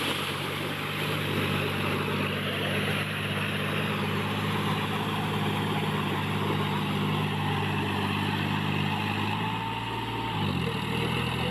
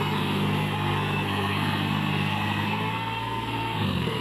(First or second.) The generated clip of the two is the second